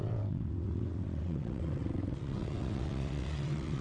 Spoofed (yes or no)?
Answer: yes